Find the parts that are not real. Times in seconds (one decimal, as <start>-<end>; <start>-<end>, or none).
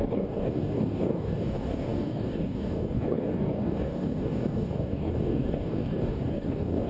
0.0-6.9